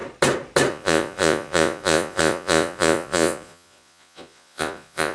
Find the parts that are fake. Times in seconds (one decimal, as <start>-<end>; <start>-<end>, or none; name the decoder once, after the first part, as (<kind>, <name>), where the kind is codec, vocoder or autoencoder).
0.7-5.1 (vocoder, Vocos)